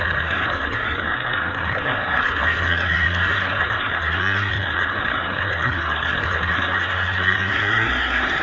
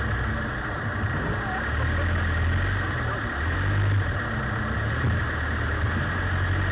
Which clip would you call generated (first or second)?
first